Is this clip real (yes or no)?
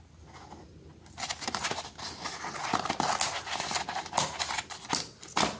yes